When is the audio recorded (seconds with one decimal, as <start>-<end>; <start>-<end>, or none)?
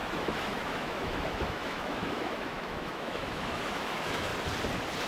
4.3-5.1